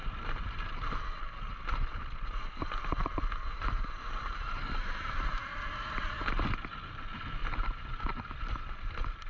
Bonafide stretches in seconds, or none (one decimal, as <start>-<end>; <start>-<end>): 0.9-3.0; 6.5-7.4; 8.9-9.3